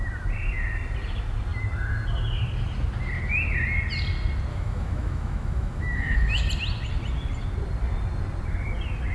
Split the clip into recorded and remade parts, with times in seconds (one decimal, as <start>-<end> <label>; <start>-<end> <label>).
0.0-4.5 recorded; 4.5-6.5 remade; 6.5-9.1 recorded